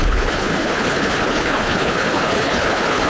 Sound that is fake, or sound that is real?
fake